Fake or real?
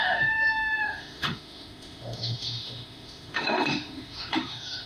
fake